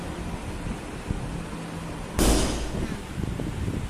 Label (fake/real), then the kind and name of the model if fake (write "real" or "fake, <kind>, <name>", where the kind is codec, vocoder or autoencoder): real